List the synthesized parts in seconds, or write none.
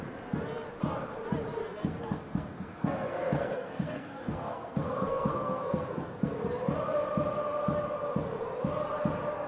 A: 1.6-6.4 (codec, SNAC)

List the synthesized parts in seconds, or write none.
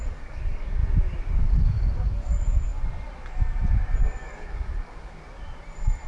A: 0.0-0.8 (codec, DAC); 1.3-2.7; 4.2-5.2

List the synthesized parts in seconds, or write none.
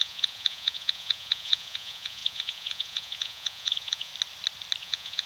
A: 0.0-4.1 (vocoder, Vocos); 4.8-5.3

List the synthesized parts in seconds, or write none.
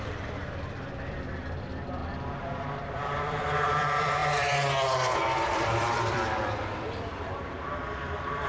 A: 0.0-4.2 (vocoder, BigVGAN v2); 5.5-8.5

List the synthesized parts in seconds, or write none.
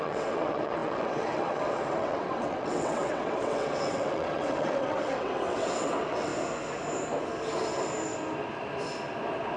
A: 0.0-6.3 (vocoder, WaveNeXt)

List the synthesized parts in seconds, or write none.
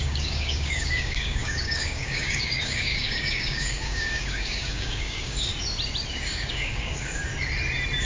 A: 0.0-5.5 (codec, DAC); 6.1-7.2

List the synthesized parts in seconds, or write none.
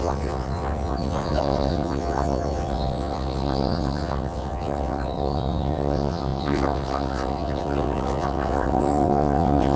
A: 0.0-9.8 (vocoder, WaveNeXt)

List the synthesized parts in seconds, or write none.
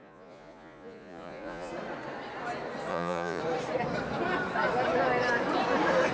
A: 0.0-1.7 (vocoder, Vocos); 2.9-3.4